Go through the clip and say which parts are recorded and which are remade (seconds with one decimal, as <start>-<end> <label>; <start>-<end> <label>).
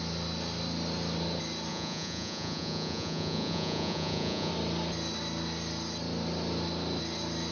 0.0-1.7 recorded; 1.7-4.5 remade; 4.5-7.5 recorded